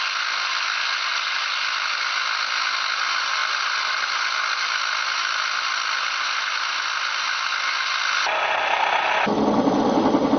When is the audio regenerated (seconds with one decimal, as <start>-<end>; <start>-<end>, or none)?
none